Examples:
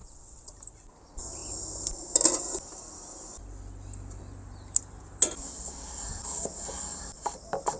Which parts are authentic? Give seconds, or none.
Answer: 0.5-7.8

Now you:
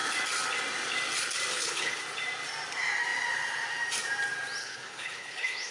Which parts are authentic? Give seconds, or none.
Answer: 0.0-1.5; 2.0-4.6